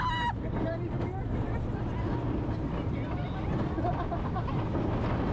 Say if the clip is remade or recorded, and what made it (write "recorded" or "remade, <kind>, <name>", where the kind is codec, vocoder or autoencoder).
recorded